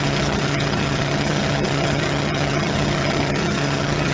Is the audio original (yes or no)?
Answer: no